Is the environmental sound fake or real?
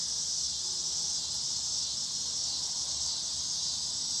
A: real